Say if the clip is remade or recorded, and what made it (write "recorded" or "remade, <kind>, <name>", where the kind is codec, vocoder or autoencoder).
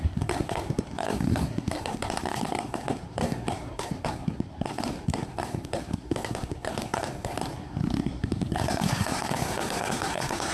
remade, codec, SNAC